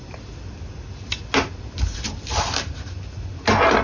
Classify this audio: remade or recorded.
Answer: recorded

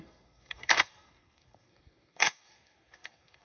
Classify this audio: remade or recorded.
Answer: remade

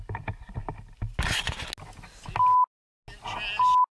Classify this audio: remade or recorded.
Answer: recorded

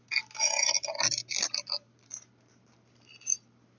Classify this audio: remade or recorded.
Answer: recorded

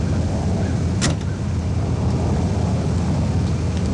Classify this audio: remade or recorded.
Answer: recorded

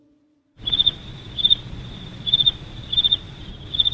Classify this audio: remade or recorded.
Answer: remade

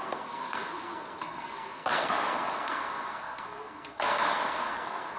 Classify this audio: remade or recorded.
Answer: remade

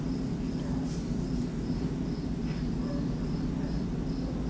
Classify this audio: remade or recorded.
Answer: recorded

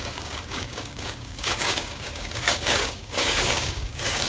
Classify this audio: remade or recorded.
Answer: remade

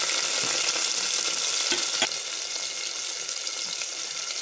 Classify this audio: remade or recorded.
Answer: recorded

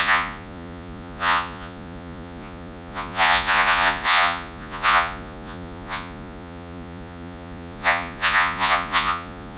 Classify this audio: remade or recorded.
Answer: remade